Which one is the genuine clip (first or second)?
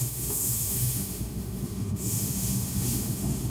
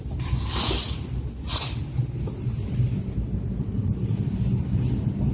second